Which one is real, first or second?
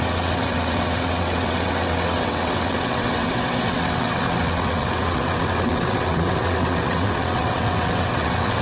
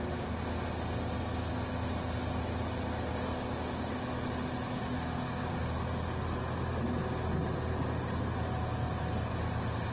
second